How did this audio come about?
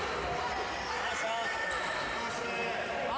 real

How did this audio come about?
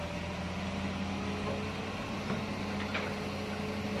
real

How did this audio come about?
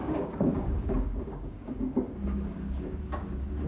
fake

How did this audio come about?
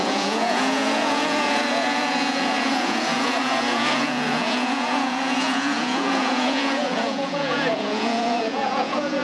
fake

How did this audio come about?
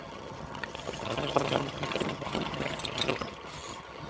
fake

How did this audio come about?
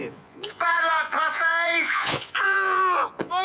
fake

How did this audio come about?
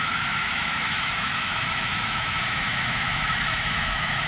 fake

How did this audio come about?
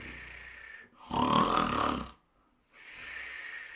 real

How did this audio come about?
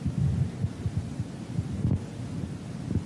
real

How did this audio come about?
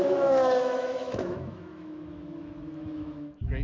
fake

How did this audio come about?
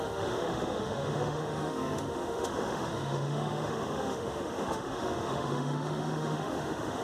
fake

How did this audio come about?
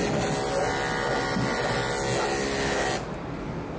real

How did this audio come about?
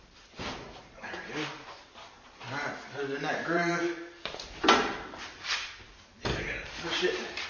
fake